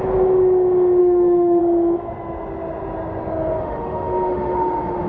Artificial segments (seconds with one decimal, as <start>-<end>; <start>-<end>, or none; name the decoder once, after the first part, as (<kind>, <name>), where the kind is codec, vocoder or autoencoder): 1.0-1.6 (autoencoder, DAC-VAE); 3.6-5.1